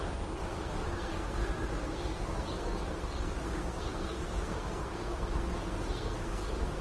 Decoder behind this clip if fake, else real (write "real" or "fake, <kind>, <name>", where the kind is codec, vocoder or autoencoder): fake, codec, SNAC